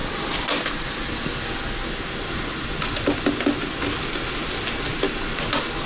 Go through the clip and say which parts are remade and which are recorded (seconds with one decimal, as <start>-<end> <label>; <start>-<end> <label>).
0.0-5.9 recorded